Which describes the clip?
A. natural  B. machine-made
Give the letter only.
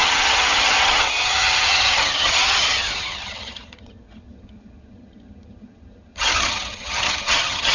B